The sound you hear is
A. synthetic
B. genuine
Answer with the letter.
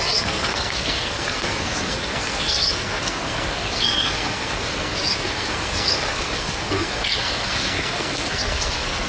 A